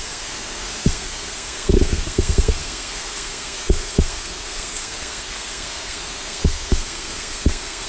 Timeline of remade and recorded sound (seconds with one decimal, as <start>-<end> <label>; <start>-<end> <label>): 0.0-7.9 remade